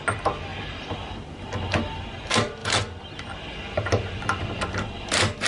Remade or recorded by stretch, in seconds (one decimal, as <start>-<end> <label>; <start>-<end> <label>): 0.0-0.5 recorded; 0.5-1.5 remade; 1.5-2.6 recorded; 2.6-5.5 remade